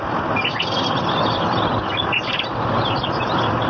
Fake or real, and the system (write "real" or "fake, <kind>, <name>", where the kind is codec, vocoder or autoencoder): real